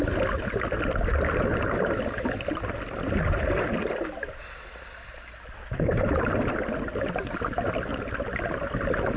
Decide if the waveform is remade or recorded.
recorded